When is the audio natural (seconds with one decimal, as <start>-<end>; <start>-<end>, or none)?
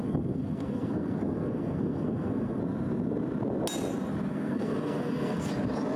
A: 2.6-4.3; 5.5-6.0